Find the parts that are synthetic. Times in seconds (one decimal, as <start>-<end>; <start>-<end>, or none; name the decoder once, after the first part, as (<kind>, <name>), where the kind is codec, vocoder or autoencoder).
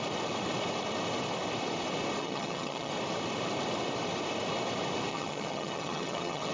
2.2-2.9 (vocoder, HiFi-GAN); 5.1-6.5